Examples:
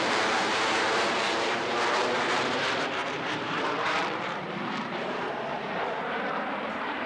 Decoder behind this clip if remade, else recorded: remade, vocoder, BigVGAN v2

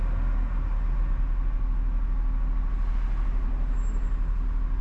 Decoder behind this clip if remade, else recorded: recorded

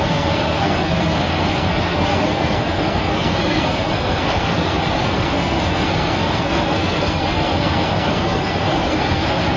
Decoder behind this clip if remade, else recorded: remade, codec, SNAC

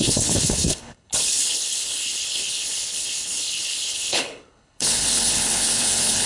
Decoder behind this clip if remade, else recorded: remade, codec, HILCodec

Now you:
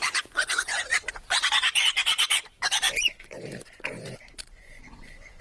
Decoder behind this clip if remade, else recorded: remade, vocoder, Vocos